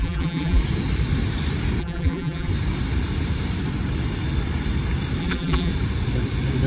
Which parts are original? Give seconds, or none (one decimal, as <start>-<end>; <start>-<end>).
0.6-1.8; 2.5-5.2; 5.7-6.7